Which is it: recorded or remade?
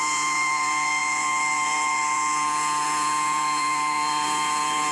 remade